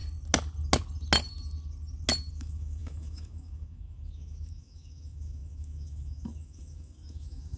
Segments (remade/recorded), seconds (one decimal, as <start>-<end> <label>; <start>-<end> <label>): 0.0-2.3 recorded; 2.3-7.6 remade

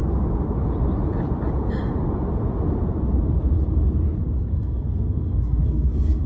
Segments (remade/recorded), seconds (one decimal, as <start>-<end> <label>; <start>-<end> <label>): 0.0-4.5 recorded; 4.5-6.3 remade

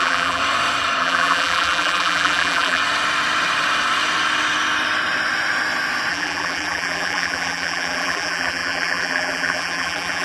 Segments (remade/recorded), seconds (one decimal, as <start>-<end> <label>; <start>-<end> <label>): 0.0-0.4 remade; 0.4-1.0 recorded; 1.0-2.8 remade; 2.8-6.1 recorded; 6.1-10.2 remade